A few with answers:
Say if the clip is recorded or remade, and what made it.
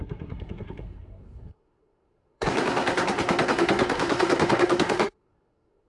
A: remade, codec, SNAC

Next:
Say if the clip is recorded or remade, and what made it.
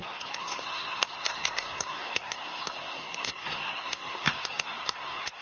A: remade, codec, SNAC